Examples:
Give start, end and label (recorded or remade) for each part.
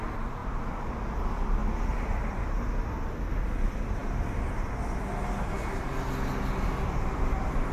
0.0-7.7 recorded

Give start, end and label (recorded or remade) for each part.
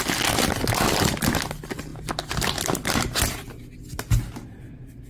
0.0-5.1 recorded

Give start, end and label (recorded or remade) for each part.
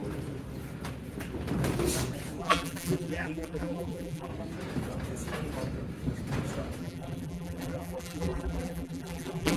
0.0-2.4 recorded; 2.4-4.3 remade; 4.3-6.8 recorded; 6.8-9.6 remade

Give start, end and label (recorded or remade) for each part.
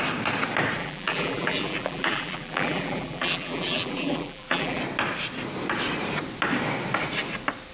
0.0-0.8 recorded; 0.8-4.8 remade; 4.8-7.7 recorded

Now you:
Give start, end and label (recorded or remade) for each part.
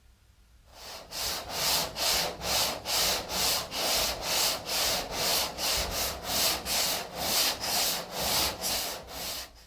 0.0-0.7 recorded; 0.7-1.3 remade; 1.3-3.1 recorded; 3.1-3.7 remade; 3.7-9.7 recorded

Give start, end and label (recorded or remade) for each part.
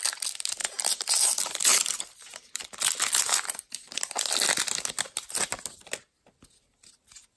0.0-0.6 recorded; 0.6-3.7 remade; 3.7-7.4 recorded